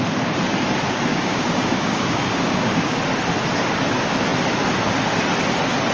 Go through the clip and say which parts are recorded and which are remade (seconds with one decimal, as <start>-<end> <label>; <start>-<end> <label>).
0.0-1.1 recorded; 1.1-3.0 remade; 3.0-5.9 recorded